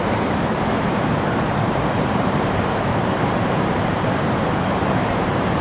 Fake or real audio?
fake